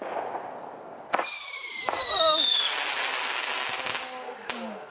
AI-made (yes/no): no